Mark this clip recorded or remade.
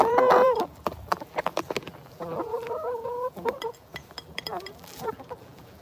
remade